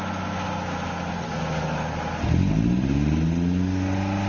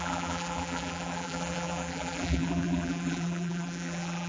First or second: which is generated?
second